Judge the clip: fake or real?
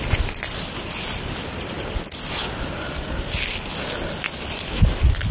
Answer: real